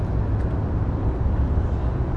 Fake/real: real